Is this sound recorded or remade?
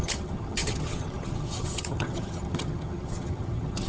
remade